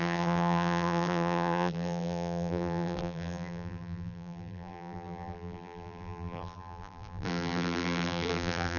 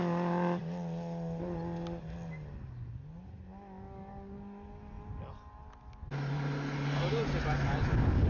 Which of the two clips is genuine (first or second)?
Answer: second